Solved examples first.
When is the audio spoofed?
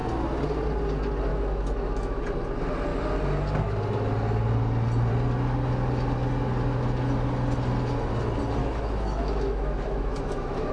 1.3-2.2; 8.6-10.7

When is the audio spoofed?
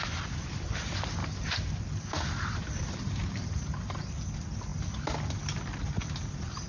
1.2-4.1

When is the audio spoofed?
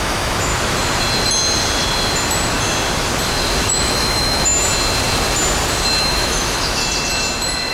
0.0-0.5; 3.7-4.7; 6.0-6.8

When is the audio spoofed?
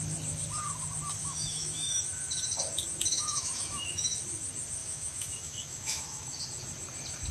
1.2-2.0; 3.1-4.2; 4.8-6.4